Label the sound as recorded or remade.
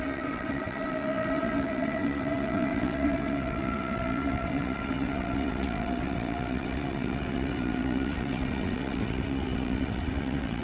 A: remade